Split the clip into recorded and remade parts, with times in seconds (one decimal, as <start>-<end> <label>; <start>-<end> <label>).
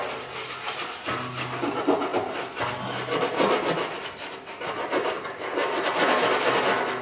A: 0.0-7.0 recorded